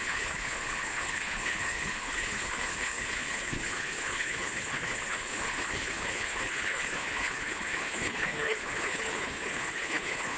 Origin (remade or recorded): remade